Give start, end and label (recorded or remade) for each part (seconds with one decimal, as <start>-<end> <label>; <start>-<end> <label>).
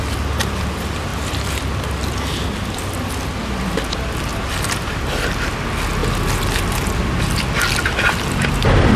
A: 0.0-9.0 recorded